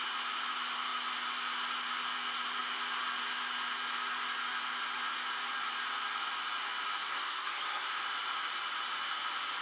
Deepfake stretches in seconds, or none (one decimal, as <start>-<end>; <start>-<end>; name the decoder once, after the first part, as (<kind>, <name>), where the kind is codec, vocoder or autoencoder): 7.1-7.9 (codec, SNAC)